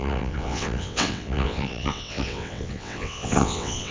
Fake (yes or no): yes